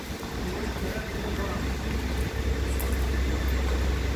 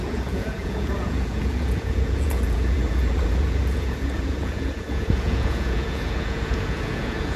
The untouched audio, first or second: first